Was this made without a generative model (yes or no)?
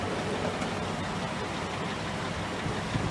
yes